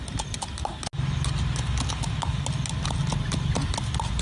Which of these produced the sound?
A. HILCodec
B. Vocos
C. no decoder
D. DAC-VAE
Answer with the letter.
C